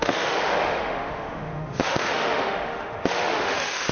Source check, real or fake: fake